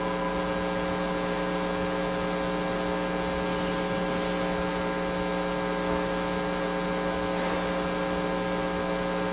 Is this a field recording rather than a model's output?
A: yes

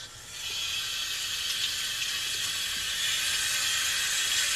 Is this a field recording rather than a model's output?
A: yes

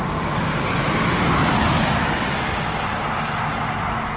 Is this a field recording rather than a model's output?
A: yes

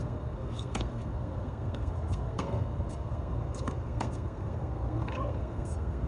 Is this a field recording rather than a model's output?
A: no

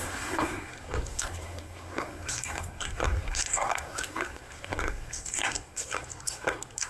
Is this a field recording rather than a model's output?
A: no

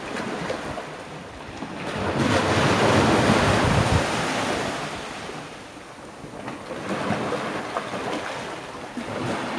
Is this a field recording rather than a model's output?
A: yes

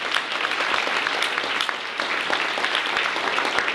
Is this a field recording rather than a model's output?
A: yes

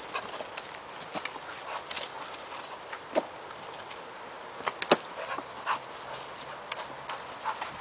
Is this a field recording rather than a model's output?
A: yes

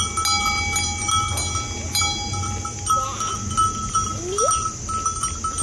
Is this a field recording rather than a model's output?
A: yes